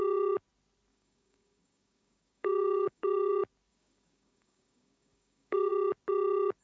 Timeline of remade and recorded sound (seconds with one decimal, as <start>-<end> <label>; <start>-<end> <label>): 0.0-0.9 recorded; 0.9-3.3 remade; 3.3-3.7 recorded; 3.7-5.7 remade; 5.7-6.6 recorded